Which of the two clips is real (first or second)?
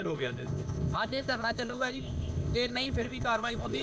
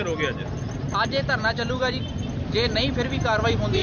second